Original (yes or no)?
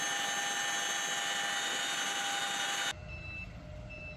yes